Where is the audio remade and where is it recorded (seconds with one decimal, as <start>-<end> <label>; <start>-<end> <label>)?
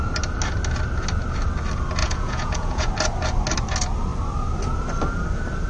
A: 0.0-2.0 recorded; 2.0-2.9 remade; 2.9-5.7 recorded